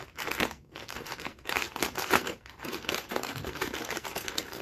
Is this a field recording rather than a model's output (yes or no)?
no